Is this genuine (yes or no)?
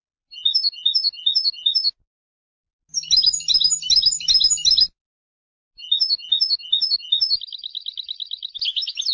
yes